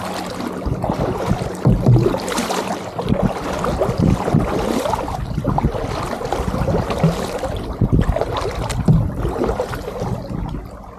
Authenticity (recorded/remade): recorded